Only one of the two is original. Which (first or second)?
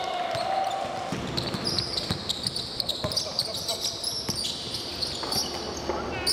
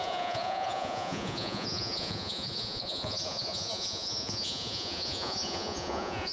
first